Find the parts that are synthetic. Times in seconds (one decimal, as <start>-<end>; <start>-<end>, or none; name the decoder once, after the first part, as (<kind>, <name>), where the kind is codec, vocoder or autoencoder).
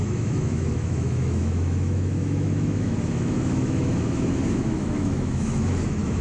0.0-6.2 (autoencoder, DAC-VAE)